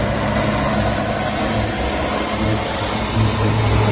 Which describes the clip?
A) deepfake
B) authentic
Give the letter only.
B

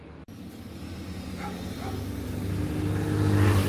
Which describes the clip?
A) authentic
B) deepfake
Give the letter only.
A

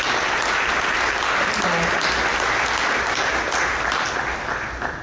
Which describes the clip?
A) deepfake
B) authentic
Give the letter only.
B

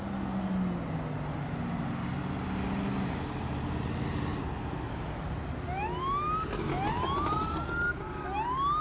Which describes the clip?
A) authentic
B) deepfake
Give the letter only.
A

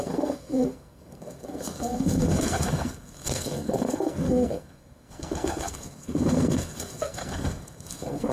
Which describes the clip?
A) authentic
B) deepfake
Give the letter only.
B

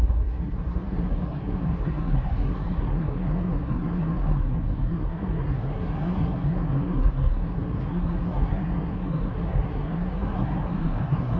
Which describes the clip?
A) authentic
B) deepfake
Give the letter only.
B